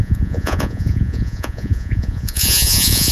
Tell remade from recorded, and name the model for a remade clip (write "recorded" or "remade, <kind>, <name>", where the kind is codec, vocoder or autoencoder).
remade, vocoder, Vocos